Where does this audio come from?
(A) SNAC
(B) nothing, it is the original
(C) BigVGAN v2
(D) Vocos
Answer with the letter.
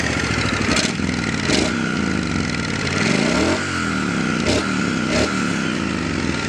B